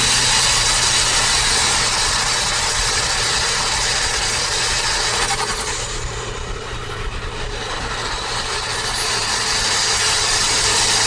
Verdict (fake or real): fake